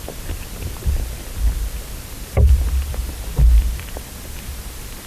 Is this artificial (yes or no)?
no